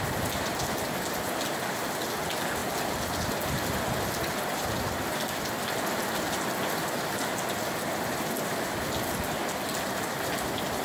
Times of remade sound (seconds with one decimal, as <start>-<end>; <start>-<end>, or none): none